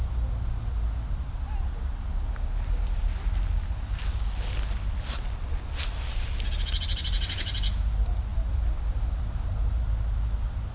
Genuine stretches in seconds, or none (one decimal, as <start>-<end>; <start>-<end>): 0.0-8.3; 9.8-10.7